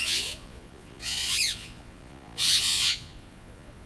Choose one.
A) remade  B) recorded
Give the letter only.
A